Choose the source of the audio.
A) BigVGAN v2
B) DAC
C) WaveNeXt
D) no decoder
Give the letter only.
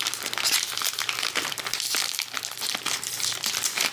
A